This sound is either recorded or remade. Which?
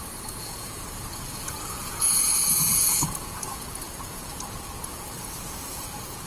remade